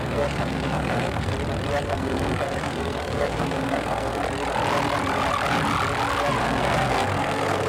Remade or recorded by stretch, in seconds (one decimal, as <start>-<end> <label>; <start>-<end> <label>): 0.0-1.3 remade; 1.3-1.8 recorded; 1.8-4.2 remade; 4.2-6.4 recorded; 6.4-7.7 remade